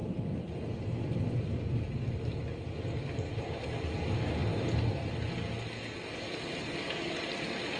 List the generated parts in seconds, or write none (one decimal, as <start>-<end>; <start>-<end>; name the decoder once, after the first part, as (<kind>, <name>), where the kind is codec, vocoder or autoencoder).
none